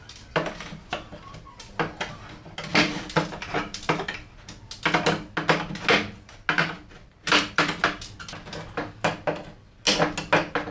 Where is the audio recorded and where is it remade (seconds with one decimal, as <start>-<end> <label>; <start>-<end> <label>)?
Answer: 0.0-2.7 recorded; 2.7-4.4 remade; 4.4-7.2 recorded; 7.2-7.8 remade; 7.8-10.7 recorded